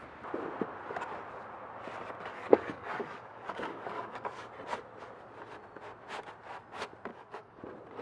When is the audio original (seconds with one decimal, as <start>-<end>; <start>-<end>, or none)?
0.0-2.3; 4.5-7.1; 7.6-8.0